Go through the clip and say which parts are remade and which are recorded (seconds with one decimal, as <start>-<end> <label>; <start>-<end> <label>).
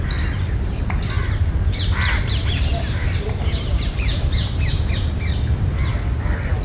0.0-1.4 recorded; 1.4-4.9 remade; 4.9-6.6 recorded